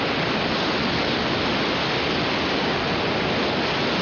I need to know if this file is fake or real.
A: real